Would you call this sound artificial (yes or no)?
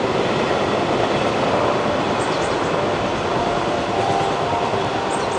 no